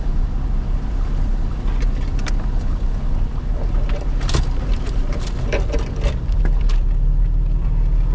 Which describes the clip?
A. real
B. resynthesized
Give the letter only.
B